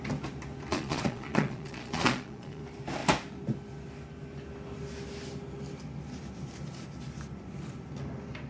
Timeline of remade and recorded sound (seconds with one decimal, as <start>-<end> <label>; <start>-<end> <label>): 0.0-0.7 recorded; 0.7-2.6 remade; 2.6-8.5 recorded